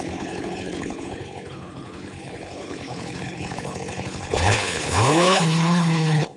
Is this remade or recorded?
remade